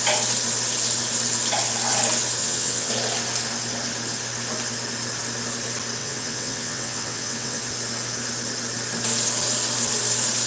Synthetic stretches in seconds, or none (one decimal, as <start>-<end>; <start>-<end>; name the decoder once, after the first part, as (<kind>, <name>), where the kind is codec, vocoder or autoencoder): 2.4-2.9 (vocoder, WaveNeXt); 6.0-7.6